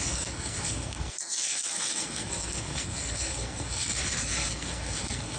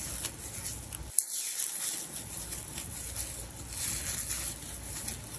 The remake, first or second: first